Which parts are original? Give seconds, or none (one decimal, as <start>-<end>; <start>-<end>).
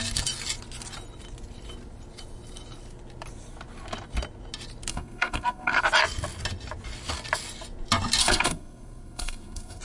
0.0-4.9; 5.8-8.2